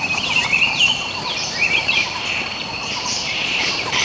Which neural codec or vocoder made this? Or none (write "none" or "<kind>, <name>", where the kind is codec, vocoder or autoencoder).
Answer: vocoder, BigVGAN v2